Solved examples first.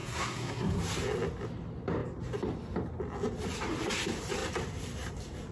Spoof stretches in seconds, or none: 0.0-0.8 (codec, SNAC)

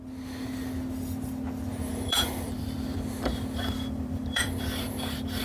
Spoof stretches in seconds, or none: 1.9-5.4 (vocoder, BigVGAN v2)